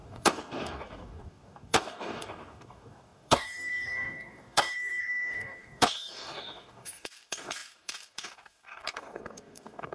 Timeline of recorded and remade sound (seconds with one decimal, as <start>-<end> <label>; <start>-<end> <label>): 0.0-9.9 remade